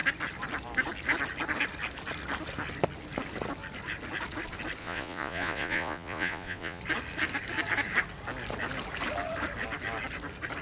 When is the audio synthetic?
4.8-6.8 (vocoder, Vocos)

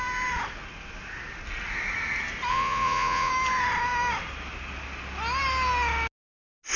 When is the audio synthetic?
2.5-3.3 (vocoder, Vocos)

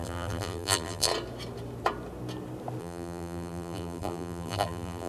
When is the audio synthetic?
0.0-1.1 (vocoder, BigVGAN v2); 2.8-5.1

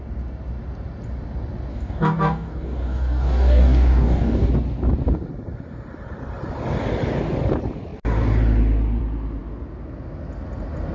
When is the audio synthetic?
1.7-4.5 (codec, DAC)

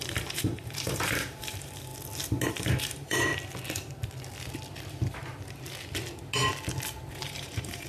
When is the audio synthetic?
0.0-1.9 (vocoder, BigVGAN v2); 2.5-3.3; 7.1-7.9

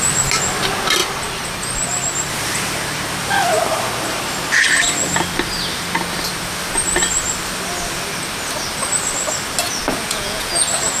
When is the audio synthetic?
10.0-10.6 (vocoder, Vocos)